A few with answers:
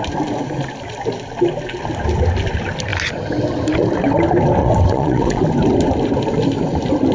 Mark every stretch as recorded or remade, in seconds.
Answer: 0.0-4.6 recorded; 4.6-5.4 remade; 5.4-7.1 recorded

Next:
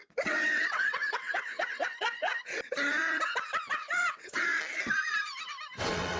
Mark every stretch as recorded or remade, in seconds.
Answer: 0.0-2.3 remade; 2.3-3.7 recorded; 3.7-4.5 remade; 4.5-5.8 recorded; 5.8-6.2 remade

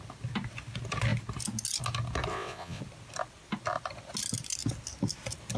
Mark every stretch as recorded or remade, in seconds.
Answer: 0.0-2.3 recorded; 2.3-2.8 remade; 2.8-5.6 recorded